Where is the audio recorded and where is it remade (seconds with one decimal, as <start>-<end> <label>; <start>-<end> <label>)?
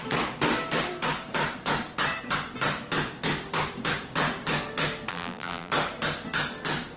0.0-5.1 recorded; 5.1-5.7 remade; 5.7-7.0 recorded